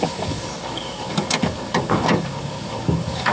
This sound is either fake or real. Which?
fake